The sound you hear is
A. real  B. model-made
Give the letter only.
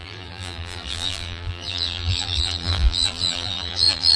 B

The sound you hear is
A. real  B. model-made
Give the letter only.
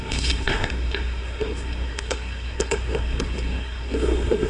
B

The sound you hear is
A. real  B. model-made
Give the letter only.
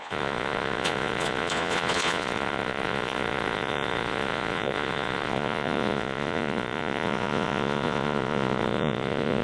B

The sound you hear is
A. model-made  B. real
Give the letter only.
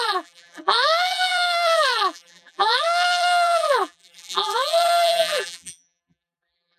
A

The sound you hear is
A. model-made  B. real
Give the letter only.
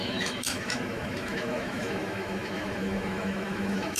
A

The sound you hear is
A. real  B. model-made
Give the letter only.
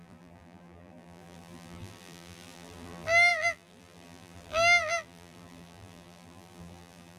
B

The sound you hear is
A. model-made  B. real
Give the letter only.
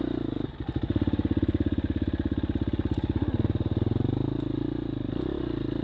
B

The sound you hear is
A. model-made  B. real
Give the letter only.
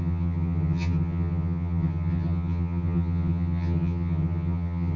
A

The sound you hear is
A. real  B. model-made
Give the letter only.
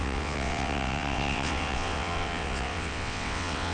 B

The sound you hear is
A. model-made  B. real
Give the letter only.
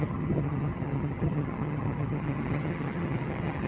A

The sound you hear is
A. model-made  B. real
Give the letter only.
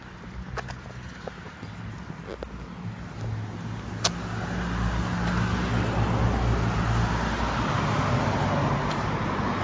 B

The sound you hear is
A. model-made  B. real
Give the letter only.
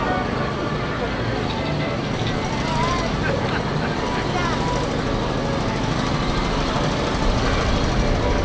B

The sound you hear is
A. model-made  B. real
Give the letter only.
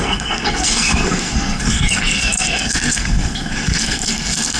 A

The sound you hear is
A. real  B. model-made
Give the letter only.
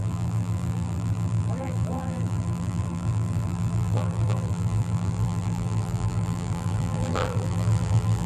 B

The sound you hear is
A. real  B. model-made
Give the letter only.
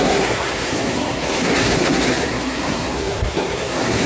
B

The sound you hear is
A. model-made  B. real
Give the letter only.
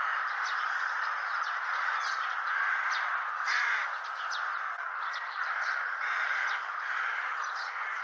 A